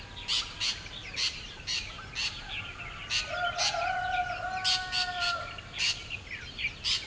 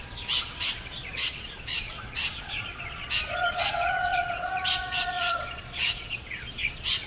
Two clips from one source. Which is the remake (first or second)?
second